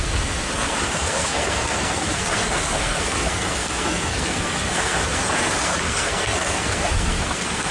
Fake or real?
fake